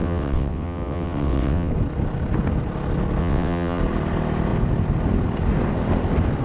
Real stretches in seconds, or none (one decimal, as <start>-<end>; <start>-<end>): 1.7-3.2; 3.8-6.4